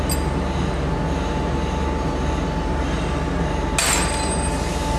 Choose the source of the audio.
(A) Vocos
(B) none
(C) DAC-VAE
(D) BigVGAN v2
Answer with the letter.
B